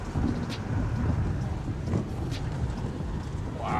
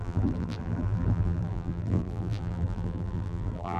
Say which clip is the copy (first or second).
second